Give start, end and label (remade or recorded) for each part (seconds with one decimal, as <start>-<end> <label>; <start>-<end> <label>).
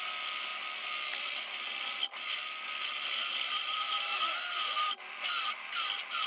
0.0-6.3 recorded